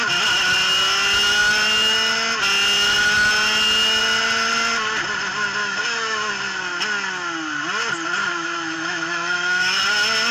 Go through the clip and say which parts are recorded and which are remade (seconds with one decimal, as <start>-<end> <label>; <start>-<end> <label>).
0.0-5.6 recorded; 5.6-6.3 remade; 6.3-8.2 recorded; 8.2-9.8 remade; 9.8-10.3 recorded